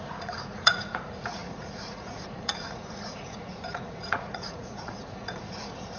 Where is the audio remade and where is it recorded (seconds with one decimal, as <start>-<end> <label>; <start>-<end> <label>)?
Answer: 0.0-6.0 remade